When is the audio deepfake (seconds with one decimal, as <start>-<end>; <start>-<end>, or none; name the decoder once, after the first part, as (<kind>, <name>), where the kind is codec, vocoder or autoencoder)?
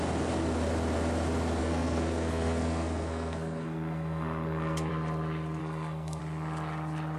1.6-4.9 (codec, SNAC); 5.6-6.2